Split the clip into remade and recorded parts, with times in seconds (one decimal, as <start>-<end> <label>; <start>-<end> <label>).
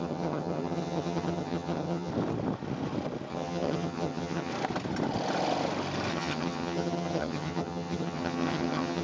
0.0-2.1 remade; 2.1-3.3 recorded; 3.3-4.5 remade; 4.5-6.1 recorded; 6.1-9.0 remade